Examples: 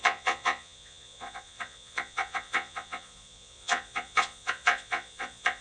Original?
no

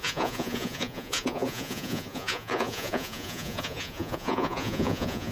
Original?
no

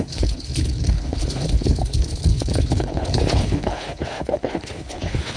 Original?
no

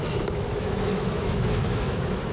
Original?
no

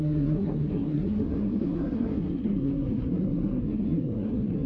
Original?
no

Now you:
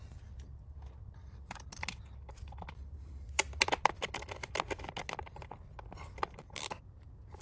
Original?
yes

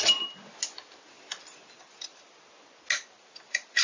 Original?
yes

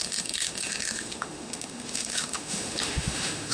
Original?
no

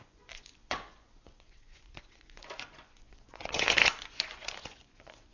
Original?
no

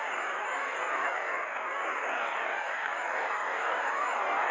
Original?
no